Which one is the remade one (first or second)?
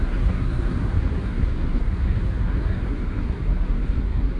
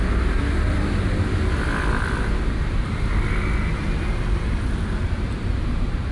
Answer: first